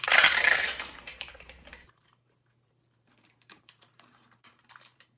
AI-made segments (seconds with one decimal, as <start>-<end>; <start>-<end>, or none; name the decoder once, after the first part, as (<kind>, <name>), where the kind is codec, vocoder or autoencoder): 0.0-5.2 (vocoder, BigVGAN v2)